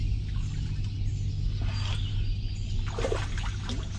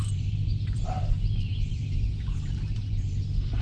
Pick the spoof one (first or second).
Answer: second